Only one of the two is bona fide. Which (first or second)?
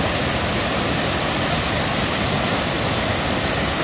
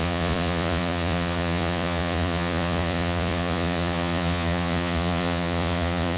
first